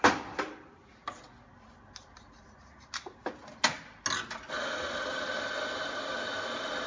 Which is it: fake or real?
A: real